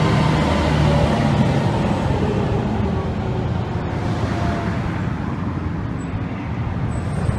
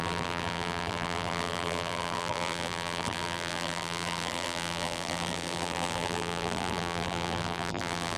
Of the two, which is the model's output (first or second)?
second